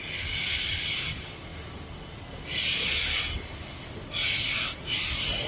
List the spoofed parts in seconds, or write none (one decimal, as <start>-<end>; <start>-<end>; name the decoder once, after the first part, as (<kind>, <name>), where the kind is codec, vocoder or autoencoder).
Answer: none